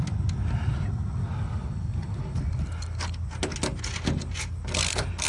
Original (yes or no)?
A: yes